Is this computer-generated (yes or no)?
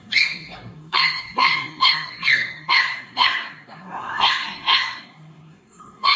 yes